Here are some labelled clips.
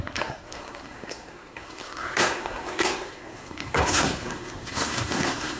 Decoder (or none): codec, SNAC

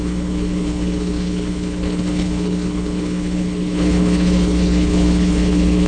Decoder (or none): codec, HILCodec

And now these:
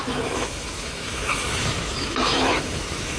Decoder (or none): autoencoder, DAC-VAE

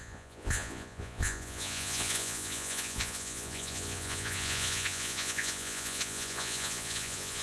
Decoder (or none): vocoder, Vocos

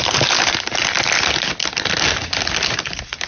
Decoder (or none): none